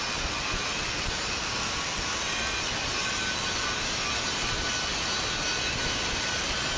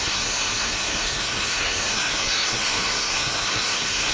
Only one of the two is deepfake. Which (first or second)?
second